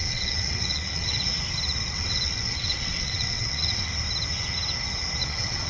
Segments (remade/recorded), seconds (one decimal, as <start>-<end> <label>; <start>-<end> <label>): 0.0-1.3 remade; 1.3-1.9 recorded; 1.9-3.9 remade; 3.9-5.2 recorded; 5.2-5.7 remade